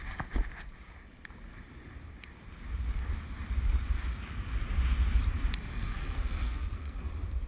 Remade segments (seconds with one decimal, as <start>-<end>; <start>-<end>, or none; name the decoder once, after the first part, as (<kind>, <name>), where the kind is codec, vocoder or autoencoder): 5.7-7.1 (codec, SNAC)